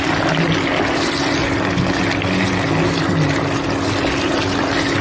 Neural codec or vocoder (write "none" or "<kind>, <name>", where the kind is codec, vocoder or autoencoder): none